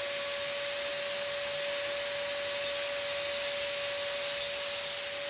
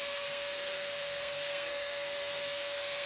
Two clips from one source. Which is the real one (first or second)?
first